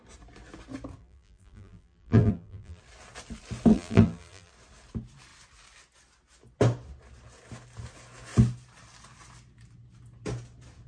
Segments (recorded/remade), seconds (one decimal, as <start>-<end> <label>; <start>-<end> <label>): 0.0-1.0 recorded; 1.0-2.8 remade; 2.8-3.7 recorded; 3.7-4.5 remade; 4.5-10.9 recorded